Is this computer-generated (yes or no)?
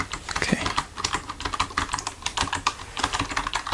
no